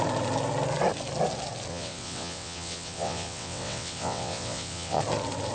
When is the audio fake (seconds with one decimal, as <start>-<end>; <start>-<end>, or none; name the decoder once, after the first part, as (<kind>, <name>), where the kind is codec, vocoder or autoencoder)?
1.7-5.0 (vocoder, WaveNeXt)